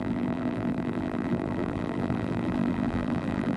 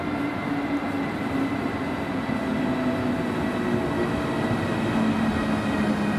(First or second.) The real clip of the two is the second